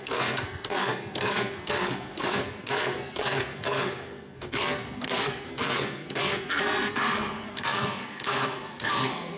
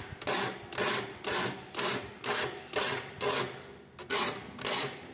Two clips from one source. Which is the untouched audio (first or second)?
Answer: second